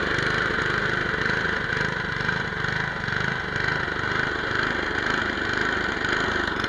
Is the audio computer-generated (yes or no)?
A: no